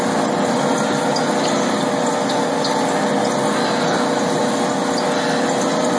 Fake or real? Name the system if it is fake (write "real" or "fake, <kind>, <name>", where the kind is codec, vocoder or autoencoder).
real